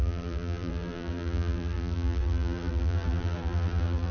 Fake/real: fake